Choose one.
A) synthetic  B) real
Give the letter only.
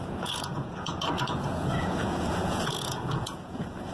A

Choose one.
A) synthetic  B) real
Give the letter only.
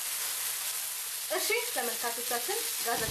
B